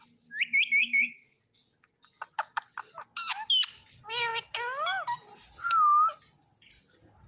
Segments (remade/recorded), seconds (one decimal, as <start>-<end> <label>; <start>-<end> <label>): 0.0-0.8 recorded; 0.8-1.4 remade; 1.4-7.3 recorded

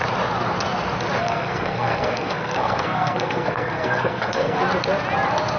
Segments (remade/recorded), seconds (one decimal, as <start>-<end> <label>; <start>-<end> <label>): 0.0-1.2 recorded; 1.2-4.6 remade; 4.6-5.6 recorded